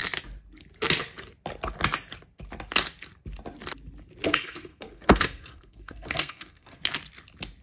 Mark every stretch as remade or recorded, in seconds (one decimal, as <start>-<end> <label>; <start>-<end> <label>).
0.0-4.2 recorded; 4.2-6.8 remade; 6.8-7.6 recorded